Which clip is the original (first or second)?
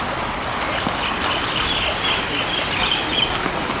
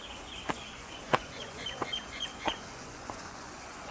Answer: first